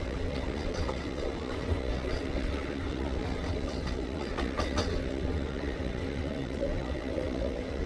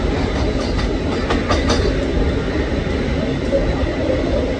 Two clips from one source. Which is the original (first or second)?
second